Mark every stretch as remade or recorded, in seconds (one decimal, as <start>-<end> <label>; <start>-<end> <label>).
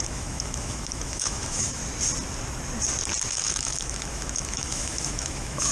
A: 0.0-1.8 remade; 1.8-3.3 recorded; 3.3-5.7 remade